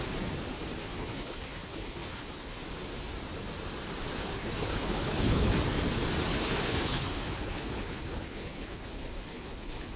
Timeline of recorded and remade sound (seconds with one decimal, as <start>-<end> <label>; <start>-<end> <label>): 0.0-0.8 recorded; 0.8-2.6 remade; 2.6-4.4 recorded; 4.4-5.5 remade; 5.5-6.3 recorded; 6.3-10.0 remade